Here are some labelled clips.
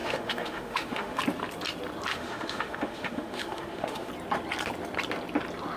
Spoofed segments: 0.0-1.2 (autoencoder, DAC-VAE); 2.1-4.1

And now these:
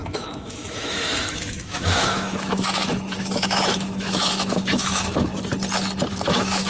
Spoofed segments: 0.0-5.3 (autoencoder, DAC-VAE); 6.1-6.7

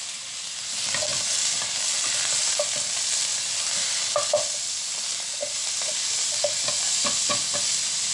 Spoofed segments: none